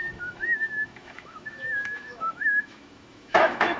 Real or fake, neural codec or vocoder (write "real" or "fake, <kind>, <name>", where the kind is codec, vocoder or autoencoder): fake, autoencoder, DAC-VAE